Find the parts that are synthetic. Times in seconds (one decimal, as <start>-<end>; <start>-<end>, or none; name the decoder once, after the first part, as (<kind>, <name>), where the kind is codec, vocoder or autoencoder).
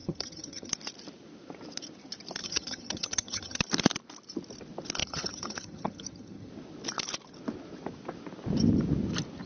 0.0-0.7 (vocoder, HiFi-GAN); 2.4-3.6; 5.0-6.5